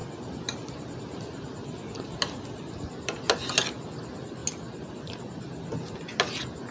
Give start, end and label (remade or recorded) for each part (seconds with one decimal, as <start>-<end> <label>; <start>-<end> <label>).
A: 0.0-1.0 remade; 1.0-6.7 recorded